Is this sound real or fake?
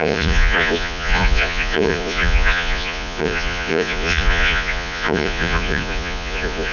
fake